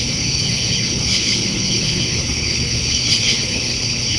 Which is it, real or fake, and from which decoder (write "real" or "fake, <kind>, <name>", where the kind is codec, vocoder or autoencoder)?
fake, codec, HILCodec